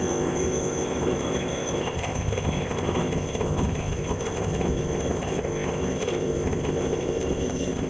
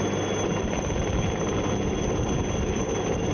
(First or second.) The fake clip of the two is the first